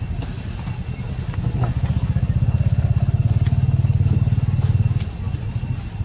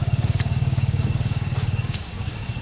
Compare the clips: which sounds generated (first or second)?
second